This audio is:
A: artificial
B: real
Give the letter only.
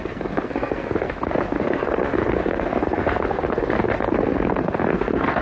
A